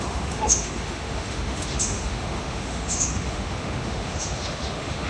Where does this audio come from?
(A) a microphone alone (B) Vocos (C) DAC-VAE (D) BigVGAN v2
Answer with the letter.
C